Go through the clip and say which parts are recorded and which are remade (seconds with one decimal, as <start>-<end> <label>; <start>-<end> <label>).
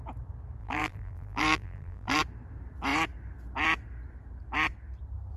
0.0-0.6 recorded; 0.6-2.2 remade; 2.2-5.4 recorded